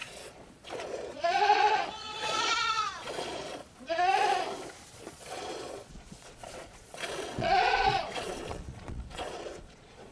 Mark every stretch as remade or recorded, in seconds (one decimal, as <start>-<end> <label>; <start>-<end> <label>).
0.0-4.1 remade; 4.1-4.9 recorded; 4.9-10.1 remade